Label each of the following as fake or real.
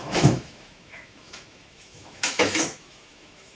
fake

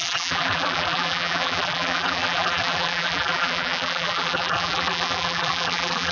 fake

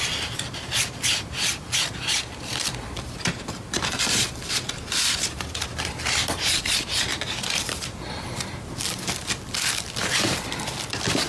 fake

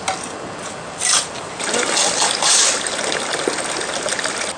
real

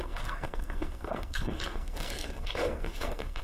fake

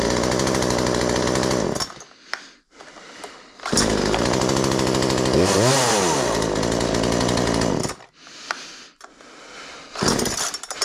real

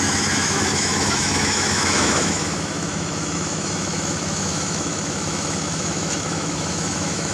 fake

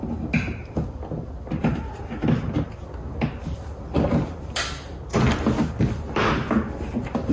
real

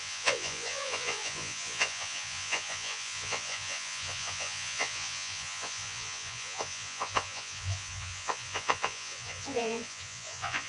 fake